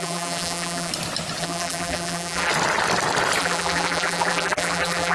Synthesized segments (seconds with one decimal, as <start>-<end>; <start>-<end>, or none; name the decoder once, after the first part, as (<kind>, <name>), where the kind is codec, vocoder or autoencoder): 0.0-0.9 (vocoder, BigVGAN v2); 1.4-2.5; 3.4-5.1